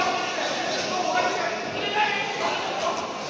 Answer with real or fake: real